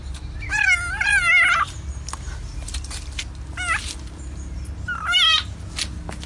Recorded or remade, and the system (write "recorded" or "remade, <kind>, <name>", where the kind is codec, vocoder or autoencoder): recorded